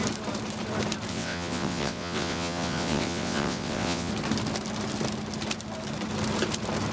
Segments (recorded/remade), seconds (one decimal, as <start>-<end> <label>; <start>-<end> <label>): 0.0-1.1 recorded; 1.1-4.1 remade; 4.1-6.9 recorded